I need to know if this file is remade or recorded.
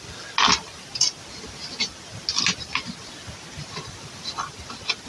recorded